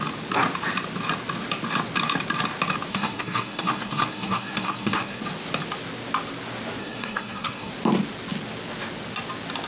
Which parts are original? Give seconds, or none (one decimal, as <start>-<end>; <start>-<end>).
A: 0.0-2.9; 5.2-6.8; 7.7-9.7